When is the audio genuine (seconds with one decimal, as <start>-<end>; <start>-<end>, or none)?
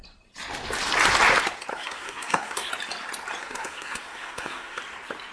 0.0-1.7; 2.7-3.4; 4.8-5.3